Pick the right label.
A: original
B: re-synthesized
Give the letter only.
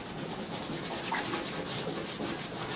A